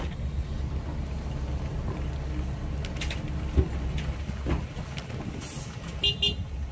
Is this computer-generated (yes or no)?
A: no